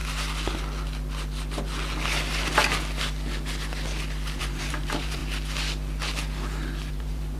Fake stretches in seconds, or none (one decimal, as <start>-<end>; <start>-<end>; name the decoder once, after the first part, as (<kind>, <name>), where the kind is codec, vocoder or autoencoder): 4.4-5.2 (vocoder, BigVGAN v2); 6.9-7.4